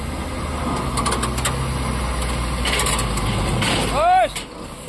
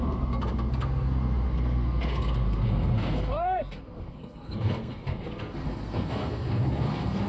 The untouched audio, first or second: first